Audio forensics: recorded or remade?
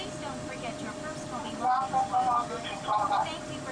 recorded